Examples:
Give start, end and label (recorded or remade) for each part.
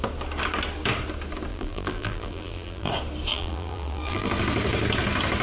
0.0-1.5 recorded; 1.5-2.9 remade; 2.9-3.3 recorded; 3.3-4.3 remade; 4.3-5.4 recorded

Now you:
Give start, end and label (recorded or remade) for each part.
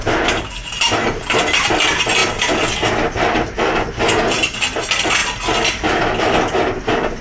0.0-7.2 recorded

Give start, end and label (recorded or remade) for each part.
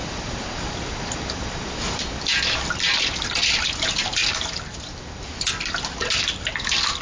0.0-0.5 remade; 0.5-7.0 recorded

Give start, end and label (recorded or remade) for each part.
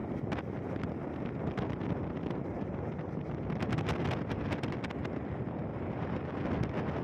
0.0-5.7 recorded; 5.7-6.4 remade; 6.4-7.0 recorded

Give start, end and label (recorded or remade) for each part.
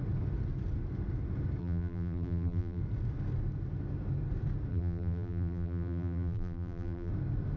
0.0-1.6 recorded; 1.6-2.8 remade; 2.8-4.7 recorded; 4.7-7.1 remade; 7.1-7.6 recorded